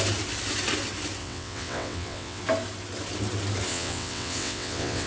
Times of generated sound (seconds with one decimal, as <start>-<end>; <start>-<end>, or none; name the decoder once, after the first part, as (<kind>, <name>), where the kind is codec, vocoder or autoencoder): 1.2-2.4 (vocoder, WaveNeXt); 3.7-5.1